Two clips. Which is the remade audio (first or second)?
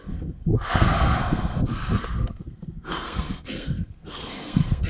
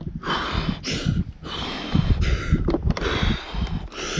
first